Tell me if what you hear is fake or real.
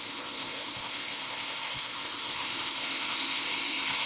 fake